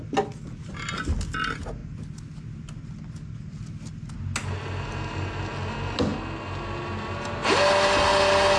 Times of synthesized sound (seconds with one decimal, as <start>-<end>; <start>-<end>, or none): none